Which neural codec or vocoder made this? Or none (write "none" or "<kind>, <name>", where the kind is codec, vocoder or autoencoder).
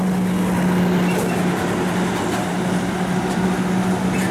none